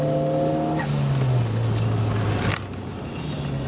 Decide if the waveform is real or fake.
real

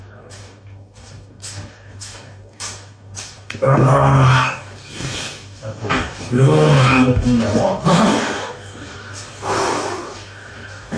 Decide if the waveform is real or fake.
fake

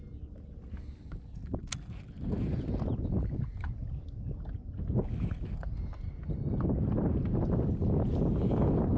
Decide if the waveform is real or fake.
real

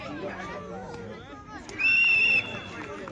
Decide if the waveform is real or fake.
real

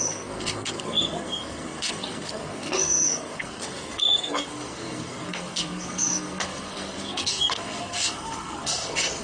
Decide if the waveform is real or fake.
fake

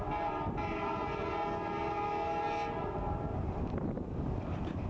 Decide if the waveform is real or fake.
real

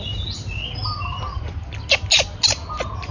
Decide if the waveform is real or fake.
real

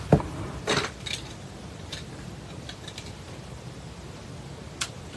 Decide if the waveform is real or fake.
real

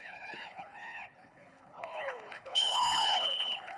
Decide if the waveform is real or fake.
fake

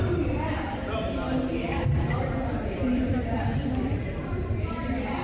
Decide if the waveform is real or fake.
fake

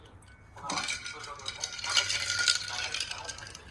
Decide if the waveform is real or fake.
real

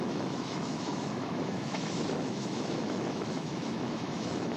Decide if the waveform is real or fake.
fake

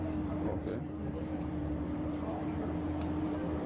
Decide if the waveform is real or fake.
fake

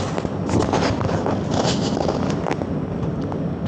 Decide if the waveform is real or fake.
real